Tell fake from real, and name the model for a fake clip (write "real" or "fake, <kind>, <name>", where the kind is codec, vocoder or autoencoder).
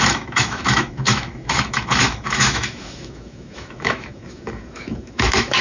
fake, autoencoder, DAC-VAE